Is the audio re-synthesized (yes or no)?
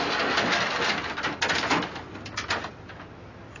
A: no